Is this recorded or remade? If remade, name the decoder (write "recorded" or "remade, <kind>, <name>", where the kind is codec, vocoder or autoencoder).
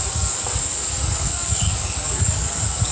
remade, codec, DAC